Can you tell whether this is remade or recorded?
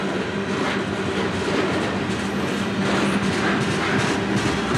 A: recorded